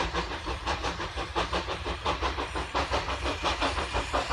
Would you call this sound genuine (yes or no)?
no